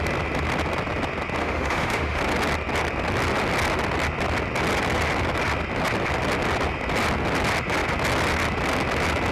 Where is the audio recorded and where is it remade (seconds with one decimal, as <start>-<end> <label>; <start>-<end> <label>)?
0.0-1.4 recorded; 1.4-2.2 remade; 2.2-9.3 recorded